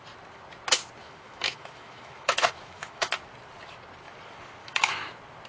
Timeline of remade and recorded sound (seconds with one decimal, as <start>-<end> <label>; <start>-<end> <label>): 0.0-1.0 recorded; 1.0-3.1 remade; 3.1-4.6 recorded; 4.6-5.1 remade; 5.1-5.5 recorded